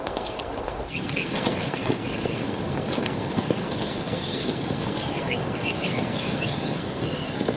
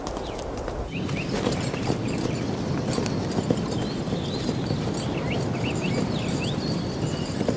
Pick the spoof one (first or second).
first